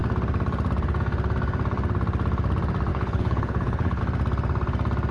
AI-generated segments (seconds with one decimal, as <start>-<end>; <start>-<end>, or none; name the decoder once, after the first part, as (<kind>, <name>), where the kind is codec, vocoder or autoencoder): 2.9-4.0 (codec, HILCodec)